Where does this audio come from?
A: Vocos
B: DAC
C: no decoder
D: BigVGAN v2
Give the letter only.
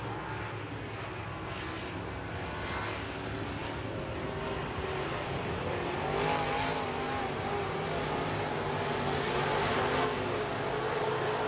C